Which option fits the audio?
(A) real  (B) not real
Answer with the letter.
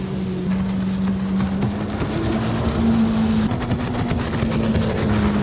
A